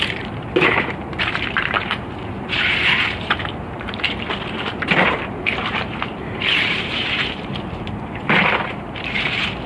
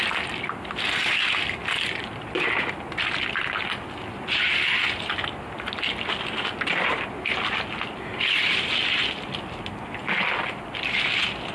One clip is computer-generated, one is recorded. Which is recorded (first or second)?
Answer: second